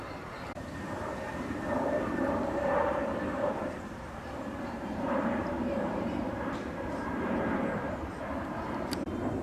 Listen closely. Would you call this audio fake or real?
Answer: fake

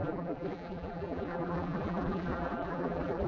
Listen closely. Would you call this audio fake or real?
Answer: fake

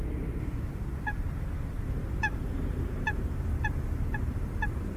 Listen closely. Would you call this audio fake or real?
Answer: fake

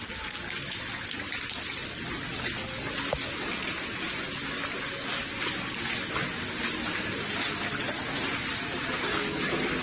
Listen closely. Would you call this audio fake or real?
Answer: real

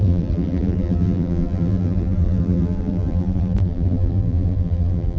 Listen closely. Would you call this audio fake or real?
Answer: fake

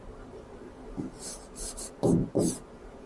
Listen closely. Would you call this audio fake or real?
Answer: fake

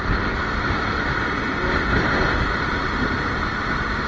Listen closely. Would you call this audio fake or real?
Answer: real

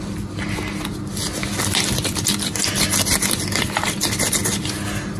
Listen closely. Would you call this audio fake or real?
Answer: real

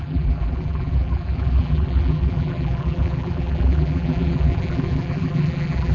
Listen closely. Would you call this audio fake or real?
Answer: fake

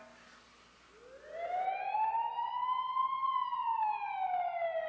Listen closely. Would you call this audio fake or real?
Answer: real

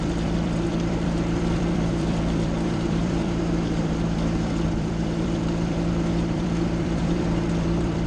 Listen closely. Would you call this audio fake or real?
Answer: fake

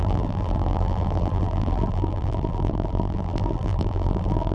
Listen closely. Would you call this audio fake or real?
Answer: fake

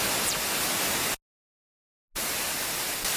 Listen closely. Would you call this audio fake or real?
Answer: real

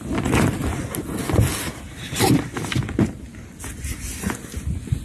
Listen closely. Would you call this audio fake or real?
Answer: real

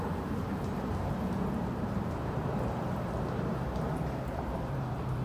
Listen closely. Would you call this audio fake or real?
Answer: fake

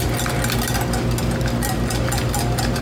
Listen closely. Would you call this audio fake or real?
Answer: real